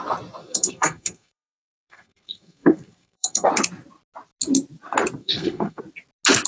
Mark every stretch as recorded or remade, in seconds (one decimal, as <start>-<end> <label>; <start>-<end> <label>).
0.0-0.4 recorded; 0.4-3.5 remade; 3.5-5.2 recorded; 5.2-5.8 remade; 5.8-6.5 recorded